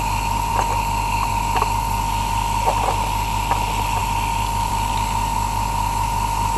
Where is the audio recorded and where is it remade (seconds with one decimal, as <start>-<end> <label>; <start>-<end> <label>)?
0.0-6.6 recorded